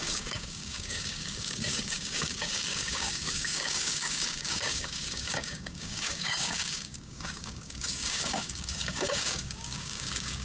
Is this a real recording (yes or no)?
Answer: no